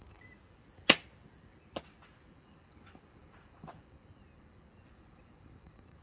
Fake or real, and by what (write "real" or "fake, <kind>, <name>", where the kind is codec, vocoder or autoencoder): real